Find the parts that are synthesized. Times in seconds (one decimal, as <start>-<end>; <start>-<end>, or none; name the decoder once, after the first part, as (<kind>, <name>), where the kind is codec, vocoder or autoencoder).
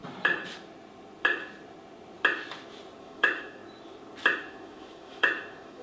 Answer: 3.0-3.6 (autoencoder, DAC-VAE); 4.4-5.8